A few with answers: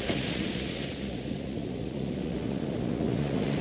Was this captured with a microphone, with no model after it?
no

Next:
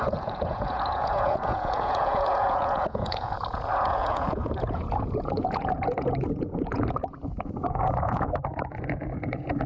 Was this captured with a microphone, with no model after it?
no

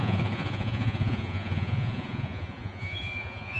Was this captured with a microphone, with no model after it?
no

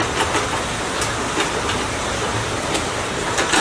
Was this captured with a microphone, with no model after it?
yes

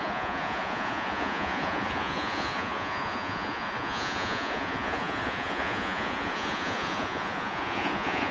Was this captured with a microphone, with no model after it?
no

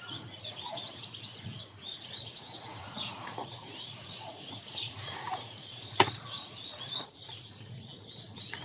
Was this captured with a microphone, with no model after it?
no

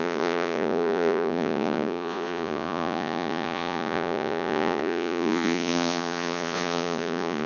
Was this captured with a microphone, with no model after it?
no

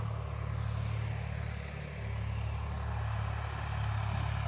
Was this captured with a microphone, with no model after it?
yes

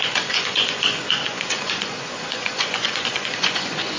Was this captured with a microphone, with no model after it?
no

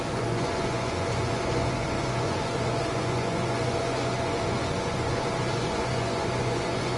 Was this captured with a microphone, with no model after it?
no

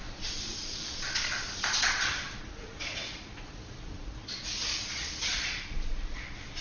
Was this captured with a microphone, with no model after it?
no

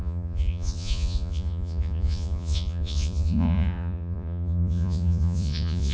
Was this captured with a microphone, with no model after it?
no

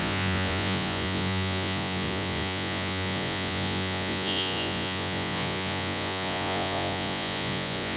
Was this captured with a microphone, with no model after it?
no